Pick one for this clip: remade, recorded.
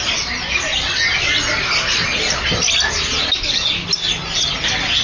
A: recorded